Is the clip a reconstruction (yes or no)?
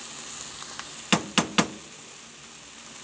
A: no